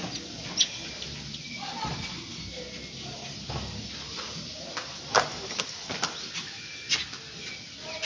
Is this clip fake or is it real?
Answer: real